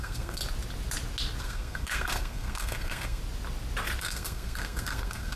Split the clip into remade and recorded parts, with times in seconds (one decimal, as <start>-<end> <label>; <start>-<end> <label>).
0.0-0.4 remade; 0.4-1.4 recorded; 1.4-3.2 remade; 3.2-4.0 recorded; 4.0-5.4 remade